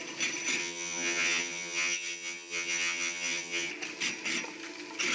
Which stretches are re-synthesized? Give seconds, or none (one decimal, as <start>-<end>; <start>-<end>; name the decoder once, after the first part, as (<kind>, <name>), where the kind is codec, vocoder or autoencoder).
0.6-3.7 (vocoder, HiFi-GAN)